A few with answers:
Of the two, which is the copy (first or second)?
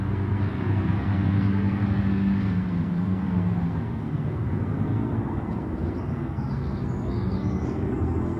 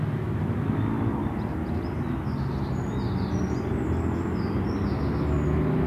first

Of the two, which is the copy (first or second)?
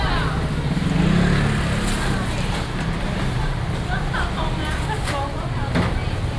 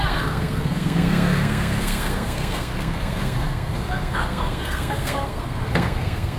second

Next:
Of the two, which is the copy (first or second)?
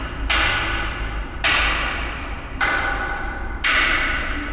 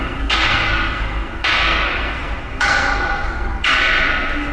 second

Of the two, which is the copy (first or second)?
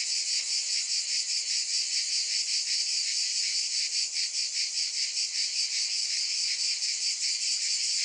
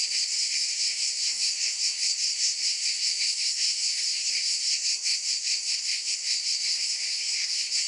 second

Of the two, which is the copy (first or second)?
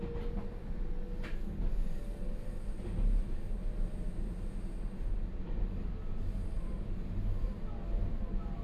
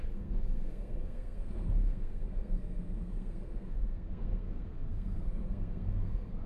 second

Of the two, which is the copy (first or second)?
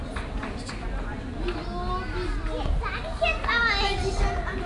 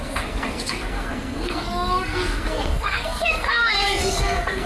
second